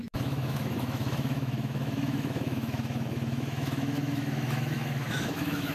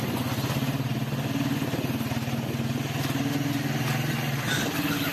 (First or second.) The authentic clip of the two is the second